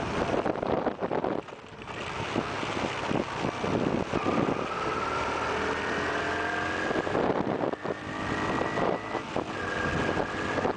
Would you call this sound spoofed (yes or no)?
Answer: no